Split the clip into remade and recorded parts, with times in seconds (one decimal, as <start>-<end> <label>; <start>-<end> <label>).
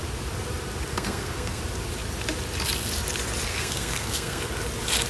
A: 0.0-0.9 recorded; 0.9-1.6 remade; 1.6-3.5 recorded; 3.5-4.4 remade; 4.4-5.1 recorded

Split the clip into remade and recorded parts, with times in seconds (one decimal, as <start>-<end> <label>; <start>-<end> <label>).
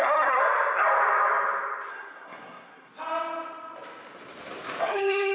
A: 0.0-0.4 remade; 0.4-1.9 recorded; 1.9-2.9 remade; 2.9-4.8 recorded; 4.8-5.3 remade